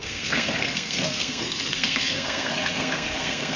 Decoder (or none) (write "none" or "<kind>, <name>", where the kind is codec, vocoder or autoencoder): codec, SNAC